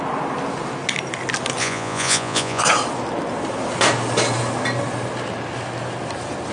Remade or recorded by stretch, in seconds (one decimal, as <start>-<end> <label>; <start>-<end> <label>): 0.0-1.6 recorded; 1.6-2.6 remade; 2.6-6.5 recorded